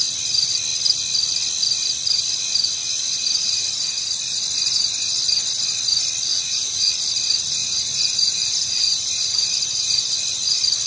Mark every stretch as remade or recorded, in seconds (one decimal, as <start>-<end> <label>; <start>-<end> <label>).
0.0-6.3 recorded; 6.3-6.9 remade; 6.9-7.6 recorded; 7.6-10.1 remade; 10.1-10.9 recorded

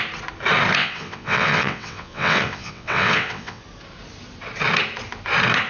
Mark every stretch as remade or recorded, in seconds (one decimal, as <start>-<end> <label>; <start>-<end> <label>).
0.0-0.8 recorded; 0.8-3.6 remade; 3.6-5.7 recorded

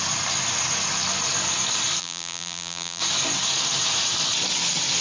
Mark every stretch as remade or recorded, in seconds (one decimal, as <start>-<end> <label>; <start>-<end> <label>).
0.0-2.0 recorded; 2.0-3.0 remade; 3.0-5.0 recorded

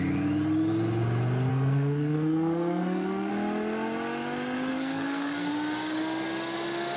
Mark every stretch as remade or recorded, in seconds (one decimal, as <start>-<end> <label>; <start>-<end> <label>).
0.0-1.5 recorded; 1.5-3.3 remade; 3.3-4.7 recorded; 4.7-5.5 remade; 5.5-7.0 recorded

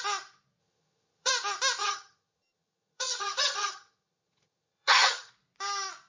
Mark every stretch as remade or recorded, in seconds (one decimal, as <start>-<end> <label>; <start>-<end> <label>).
0.0-0.6 recorded; 0.6-1.3 remade; 1.3-1.8 recorded; 1.8-5.3 remade; 5.3-6.1 recorded

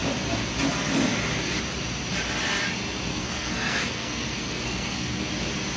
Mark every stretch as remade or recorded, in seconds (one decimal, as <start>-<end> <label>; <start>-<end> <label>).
0.0-3.1 recorded; 3.1-5.3 remade; 5.3-5.8 recorded

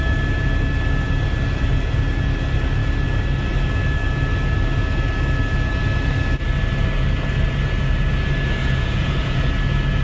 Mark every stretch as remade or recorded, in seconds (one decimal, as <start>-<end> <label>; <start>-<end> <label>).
0.0-8.6 recorded; 8.6-9.4 remade; 9.4-10.0 recorded